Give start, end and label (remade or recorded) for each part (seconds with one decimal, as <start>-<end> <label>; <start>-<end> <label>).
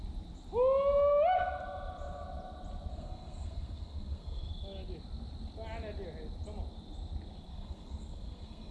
0.0-2.9 recorded; 2.9-4.5 remade; 4.5-7.5 recorded; 7.5-8.7 remade